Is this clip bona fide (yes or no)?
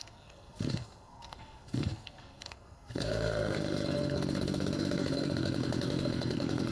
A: no